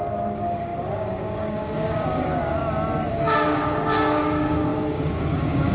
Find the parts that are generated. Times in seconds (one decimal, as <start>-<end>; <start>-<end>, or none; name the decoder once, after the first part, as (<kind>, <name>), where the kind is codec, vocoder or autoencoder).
0.0-2.6 (codec, DAC); 3.1-5.7